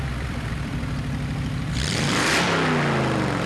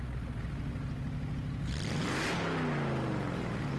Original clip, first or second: second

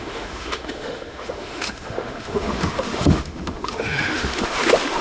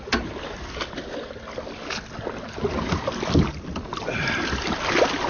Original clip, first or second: second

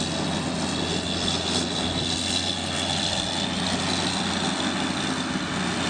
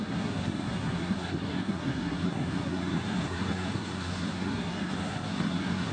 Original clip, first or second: first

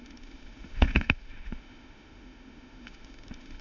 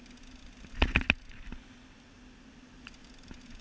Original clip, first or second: second